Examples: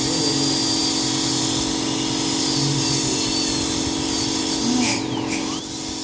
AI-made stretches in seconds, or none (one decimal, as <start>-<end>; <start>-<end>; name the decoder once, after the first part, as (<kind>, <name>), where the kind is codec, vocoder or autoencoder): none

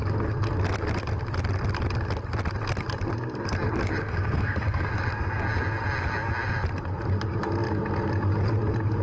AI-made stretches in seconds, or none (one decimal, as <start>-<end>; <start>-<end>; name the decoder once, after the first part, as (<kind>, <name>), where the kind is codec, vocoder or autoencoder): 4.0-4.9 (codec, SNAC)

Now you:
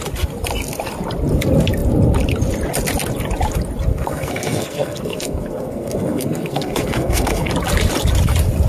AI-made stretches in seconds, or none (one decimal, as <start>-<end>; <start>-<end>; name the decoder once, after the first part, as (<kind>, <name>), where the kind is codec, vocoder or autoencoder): 3.9-7.5 (codec, SNAC)

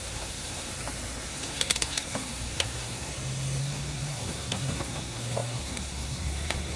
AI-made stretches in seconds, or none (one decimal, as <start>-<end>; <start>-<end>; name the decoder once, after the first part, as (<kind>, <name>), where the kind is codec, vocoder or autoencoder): 0.0-0.7 (codec, SNAC); 1.3-3.1; 3.6-6.8

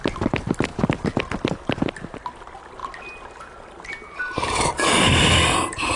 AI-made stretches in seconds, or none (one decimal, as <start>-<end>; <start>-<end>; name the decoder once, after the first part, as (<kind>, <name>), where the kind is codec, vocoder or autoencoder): none

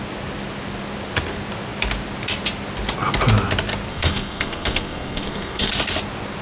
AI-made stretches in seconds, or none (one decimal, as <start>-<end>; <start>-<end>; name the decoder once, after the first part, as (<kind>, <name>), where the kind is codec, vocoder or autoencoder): 3.9-5.7 (codec, SNAC)

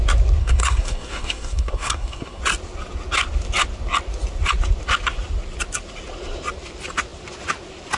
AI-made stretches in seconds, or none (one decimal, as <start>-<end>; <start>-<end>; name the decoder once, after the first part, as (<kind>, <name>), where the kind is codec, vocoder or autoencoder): 0.4-2.4 (codec, SNAC)